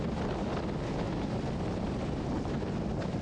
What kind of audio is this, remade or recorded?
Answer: recorded